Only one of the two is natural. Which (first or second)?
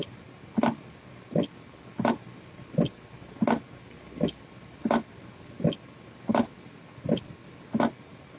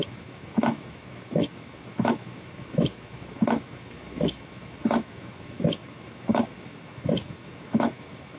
first